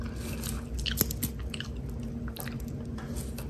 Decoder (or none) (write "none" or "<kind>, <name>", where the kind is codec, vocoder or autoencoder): none